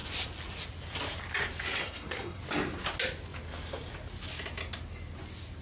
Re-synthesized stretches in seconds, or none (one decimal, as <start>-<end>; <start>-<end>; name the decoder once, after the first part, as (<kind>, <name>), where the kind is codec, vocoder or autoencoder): 1.8-2.4 (codec, SNAC)